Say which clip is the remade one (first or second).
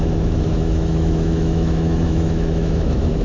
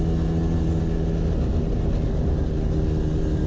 first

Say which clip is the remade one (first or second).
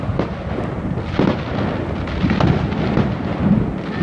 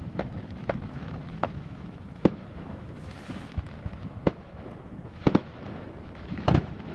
second